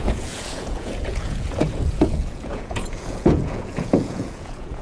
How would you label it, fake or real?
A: fake